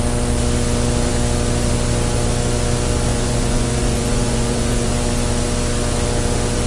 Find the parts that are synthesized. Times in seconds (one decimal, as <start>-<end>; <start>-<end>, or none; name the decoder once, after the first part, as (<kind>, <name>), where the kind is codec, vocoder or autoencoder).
3.1-4.9 (vocoder, Vocos)